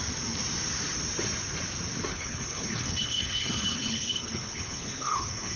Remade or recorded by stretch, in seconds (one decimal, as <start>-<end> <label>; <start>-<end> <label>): 0.0-2.1 recorded; 2.1-5.6 remade